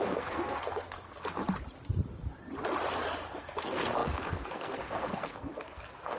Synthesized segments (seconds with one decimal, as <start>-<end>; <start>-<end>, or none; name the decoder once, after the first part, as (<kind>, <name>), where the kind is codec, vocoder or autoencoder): 0.0-1.4 (codec, SNAC); 3.3-6.2